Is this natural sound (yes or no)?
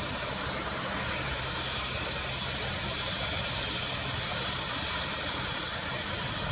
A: no